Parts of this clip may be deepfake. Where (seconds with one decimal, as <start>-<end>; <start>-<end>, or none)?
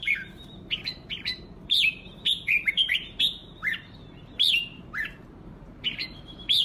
0.0-3.4; 4.5-6.6